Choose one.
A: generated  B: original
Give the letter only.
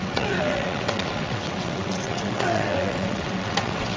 A